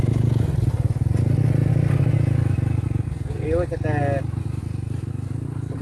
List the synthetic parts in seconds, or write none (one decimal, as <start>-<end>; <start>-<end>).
none